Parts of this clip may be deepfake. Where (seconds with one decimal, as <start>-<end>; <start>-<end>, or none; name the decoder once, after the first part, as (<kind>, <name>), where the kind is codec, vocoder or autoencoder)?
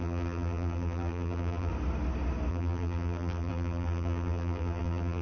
0.0-1.7 (vocoder, BigVGAN v2); 2.5-5.2